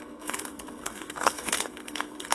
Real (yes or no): no